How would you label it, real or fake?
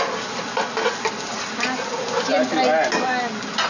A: real